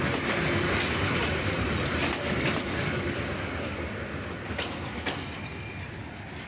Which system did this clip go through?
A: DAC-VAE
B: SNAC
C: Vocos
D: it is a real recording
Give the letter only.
D